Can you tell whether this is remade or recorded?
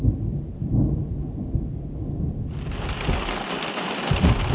recorded